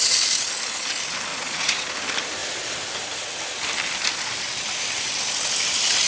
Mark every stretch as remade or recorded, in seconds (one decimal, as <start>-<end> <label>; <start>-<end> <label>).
0.0-1.3 recorded; 1.3-1.9 remade; 1.9-6.1 recorded